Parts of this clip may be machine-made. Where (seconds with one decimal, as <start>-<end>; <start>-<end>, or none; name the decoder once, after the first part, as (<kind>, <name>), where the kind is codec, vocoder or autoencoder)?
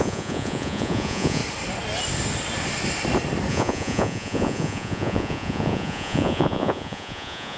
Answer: 0.0-1.4 (vocoder, Vocos); 3.5-7.6